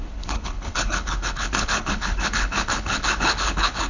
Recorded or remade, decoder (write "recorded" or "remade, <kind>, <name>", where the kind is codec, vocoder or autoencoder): remade, codec, HILCodec